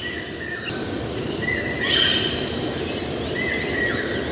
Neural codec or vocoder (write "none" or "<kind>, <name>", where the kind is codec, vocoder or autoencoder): none